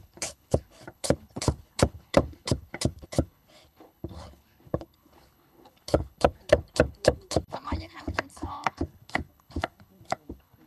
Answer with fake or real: fake